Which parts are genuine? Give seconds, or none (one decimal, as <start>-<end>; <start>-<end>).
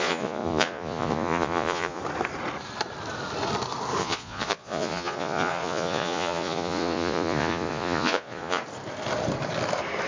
2.0-4.0; 8.6-10.1